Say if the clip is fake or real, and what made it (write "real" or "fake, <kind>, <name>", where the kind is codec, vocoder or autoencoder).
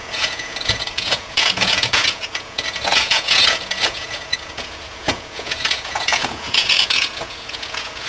fake, vocoder, Vocos